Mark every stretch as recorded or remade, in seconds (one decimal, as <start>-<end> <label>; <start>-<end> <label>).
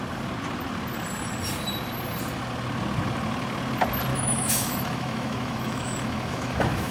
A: 0.0-4.1 recorded; 4.1-6.9 remade